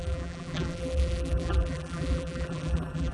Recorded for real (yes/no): no